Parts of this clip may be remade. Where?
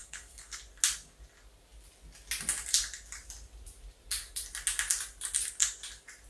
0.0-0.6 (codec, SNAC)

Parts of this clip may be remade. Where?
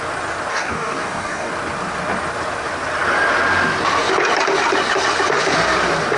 0.5-1.5 (codec, DAC)